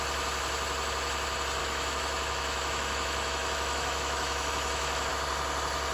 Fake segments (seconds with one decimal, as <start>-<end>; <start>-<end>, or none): 1.6-5.1